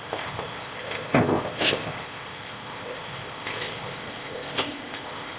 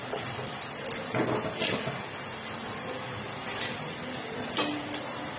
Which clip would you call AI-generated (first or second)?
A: first